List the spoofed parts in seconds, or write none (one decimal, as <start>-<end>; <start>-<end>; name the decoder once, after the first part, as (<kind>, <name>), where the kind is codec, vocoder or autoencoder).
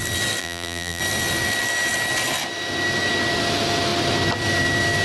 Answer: 0.4-1.0 (vocoder, BigVGAN v2)